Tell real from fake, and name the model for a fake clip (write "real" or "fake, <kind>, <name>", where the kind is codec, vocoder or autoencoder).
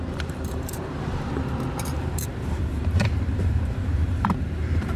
fake, vocoder, BigVGAN v2